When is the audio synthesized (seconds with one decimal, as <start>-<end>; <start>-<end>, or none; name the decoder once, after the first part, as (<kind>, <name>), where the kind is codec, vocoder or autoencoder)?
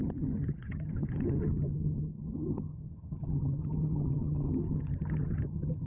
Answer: 0.0-5.9 (vocoder, HiFi-GAN)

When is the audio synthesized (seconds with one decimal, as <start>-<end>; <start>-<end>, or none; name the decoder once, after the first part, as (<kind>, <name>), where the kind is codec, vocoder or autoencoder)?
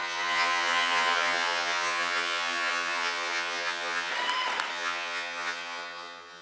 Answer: 0.0-4.1 (vocoder, HiFi-GAN); 4.7-6.4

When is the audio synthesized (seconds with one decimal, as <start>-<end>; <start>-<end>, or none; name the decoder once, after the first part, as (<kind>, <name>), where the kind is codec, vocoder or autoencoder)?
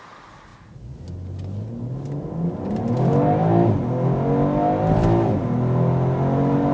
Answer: none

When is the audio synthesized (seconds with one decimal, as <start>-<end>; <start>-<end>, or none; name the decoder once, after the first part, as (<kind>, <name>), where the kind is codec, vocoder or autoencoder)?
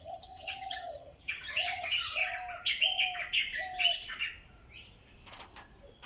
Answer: 0.0-2.2 (vocoder, HiFi-GAN)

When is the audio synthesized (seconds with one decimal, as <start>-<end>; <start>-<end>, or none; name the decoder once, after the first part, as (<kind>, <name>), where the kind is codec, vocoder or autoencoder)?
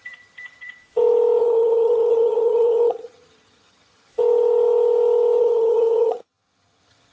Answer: 0.0-0.8 (vocoder, HiFi-GAN); 1.4-4.1; 5.4-7.1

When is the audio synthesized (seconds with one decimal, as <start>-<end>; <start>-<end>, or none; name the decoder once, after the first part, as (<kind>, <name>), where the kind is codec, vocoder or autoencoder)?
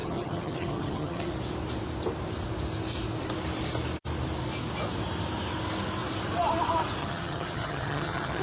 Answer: 0.0-1.3 (vocoder, HiFi-GAN); 7.0-8.4